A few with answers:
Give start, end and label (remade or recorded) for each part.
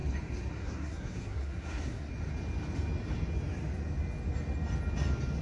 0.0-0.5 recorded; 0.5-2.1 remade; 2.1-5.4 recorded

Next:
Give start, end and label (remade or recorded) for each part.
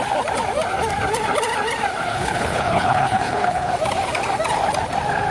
0.0-2.1 recorded; 2.1-3.7 remade; 3.7-5.3 recorded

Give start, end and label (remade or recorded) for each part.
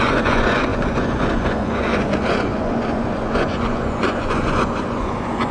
0.0-5.5 remade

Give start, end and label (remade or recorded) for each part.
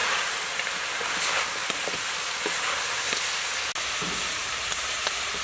0.0-0.9 remade; 0.9-4.4 recorded; 4.4-5.4 remade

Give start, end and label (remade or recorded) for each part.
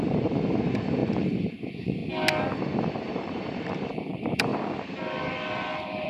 0.0-2.0 remade; 2.0-2.9 recorded; 2.9-4.5 remade; 4.5-5.5 recorded; 5.5-6.1 remade